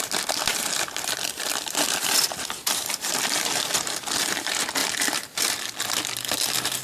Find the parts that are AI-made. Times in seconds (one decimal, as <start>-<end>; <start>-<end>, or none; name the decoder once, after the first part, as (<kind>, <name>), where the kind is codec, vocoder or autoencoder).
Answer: 0.5-3.8 (vocoder, BigVGAN v2)